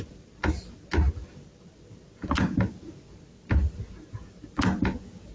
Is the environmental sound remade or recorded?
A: recorded